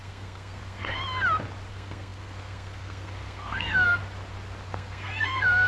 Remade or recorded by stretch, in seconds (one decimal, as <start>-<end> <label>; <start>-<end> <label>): 0.0-1.0 remade; 1.0-1.7 recorded; 1.7-4.0 remade; 4.0-4.7 recorded; 4.7-5.7 remade